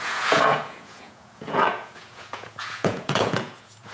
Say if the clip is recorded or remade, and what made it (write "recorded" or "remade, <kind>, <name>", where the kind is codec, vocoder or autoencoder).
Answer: remade, vocoder, Vocos